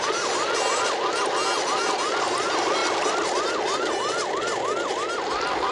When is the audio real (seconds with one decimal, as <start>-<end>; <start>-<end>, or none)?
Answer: 0.0-5.7